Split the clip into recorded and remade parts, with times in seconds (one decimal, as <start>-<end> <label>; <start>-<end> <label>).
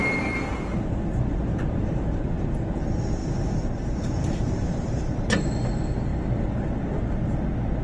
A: 0.0-1.8 remade; 1.8-3.2 recorded; 3.2-5.5 remade; 5.5-7.8 recorded